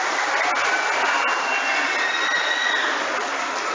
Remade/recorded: recorded